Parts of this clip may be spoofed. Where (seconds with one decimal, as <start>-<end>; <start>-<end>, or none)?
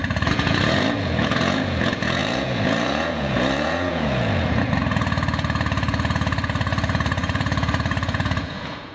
0.0-8.9